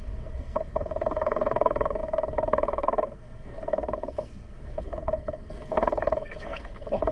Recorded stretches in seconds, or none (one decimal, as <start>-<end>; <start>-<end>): none